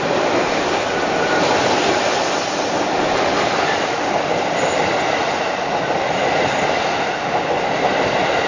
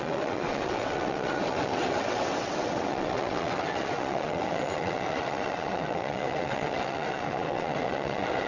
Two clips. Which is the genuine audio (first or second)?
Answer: first